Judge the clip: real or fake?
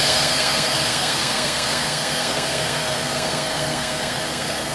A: fake